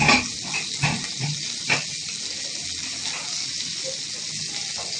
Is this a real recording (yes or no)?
yes